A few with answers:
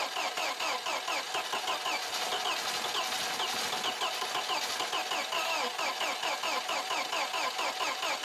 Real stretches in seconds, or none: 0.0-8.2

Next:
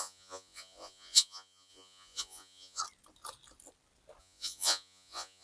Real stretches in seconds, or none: 2.8-4.2

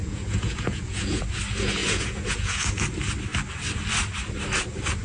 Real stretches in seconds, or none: 1.2-1.8; 2.6-5.0

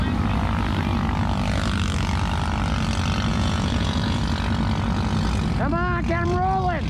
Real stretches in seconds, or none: 0.0-3.3; 4.2-6.9

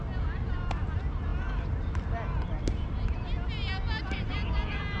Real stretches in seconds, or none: 0.0-5.0